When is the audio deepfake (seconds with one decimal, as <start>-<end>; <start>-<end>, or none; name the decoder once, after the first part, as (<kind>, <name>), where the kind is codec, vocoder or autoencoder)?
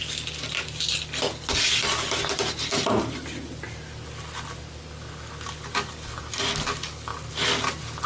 none